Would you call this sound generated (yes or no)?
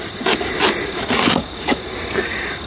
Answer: no